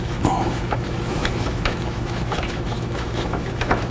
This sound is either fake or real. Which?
fake